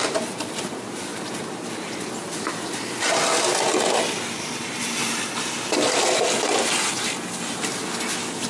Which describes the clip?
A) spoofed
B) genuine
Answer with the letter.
B